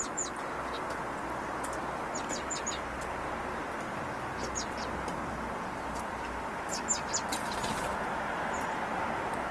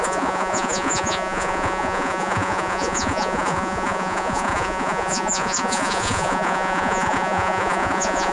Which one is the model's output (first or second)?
second